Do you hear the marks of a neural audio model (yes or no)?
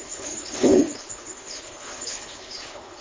yes